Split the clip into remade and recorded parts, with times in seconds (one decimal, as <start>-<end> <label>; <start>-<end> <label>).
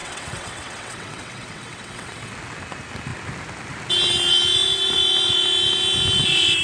0.0-2.3 remade; 2.3-6.6 recorded